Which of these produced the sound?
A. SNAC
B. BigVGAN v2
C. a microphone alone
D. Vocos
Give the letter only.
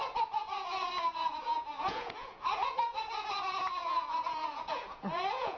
D